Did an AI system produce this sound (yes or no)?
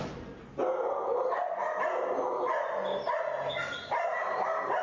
no